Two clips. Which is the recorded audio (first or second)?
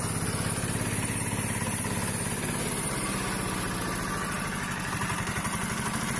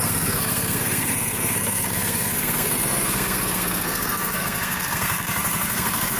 first